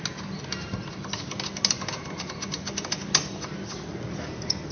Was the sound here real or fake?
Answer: real